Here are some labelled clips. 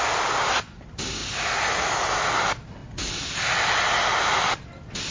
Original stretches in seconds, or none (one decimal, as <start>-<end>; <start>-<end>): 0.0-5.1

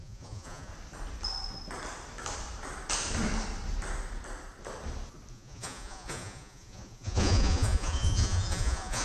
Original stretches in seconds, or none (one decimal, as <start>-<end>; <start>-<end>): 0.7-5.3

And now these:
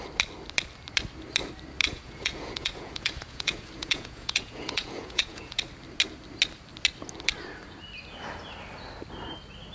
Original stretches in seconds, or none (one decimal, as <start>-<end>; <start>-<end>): 0.0-1.8; 5.6-9.7

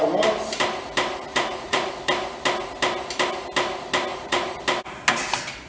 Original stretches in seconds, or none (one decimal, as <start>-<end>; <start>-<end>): 0.0-1.3; 1.9-4.1; 4.6-5.7